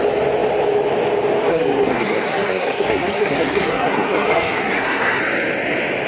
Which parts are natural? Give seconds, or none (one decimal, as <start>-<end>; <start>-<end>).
0.0-1.5; 5.2-6.1